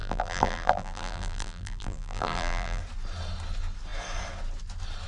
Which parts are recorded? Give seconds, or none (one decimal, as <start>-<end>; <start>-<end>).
2.8-5.1

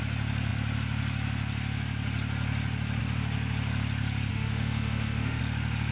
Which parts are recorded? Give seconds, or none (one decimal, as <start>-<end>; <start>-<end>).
0.0-4.3; 5.4-5.9

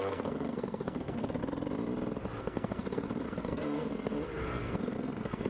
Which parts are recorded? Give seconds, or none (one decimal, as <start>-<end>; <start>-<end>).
1.4-2.4